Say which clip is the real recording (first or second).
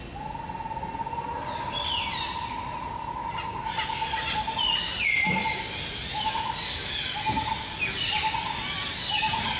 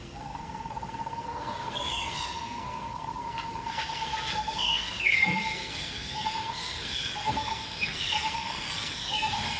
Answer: first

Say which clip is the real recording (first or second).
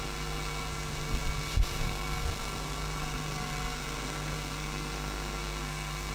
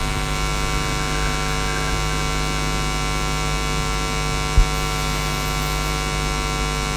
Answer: second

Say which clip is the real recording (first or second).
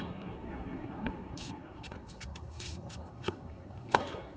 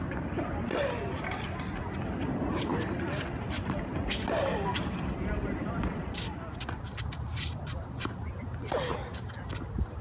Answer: second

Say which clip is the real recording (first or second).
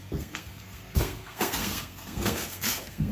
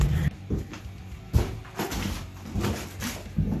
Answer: second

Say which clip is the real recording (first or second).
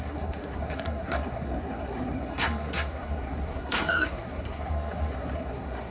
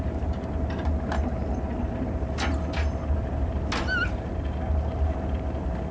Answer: second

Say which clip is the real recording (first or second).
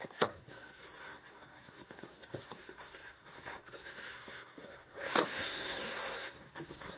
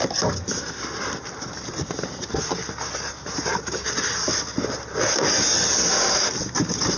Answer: second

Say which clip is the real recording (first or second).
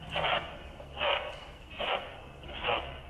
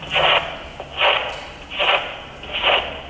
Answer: second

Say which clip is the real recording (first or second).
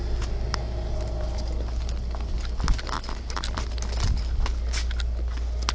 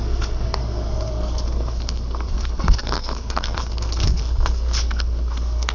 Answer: first